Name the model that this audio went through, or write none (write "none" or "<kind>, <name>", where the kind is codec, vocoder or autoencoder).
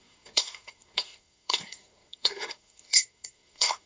codec, SNAC